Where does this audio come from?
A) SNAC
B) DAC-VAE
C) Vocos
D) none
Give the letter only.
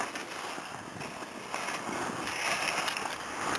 D